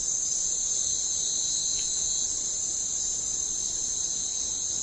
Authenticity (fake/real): real